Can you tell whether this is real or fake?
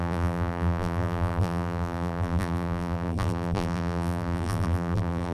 fake